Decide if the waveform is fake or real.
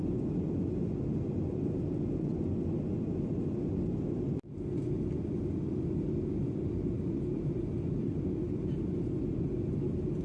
real